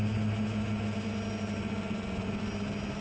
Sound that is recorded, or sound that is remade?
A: recorded